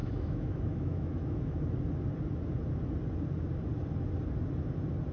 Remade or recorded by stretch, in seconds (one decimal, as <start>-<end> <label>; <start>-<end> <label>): 0.0-1.6 remade; 1.6-5.1 recorded